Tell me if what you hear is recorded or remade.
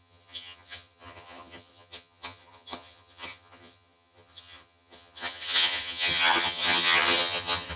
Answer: remade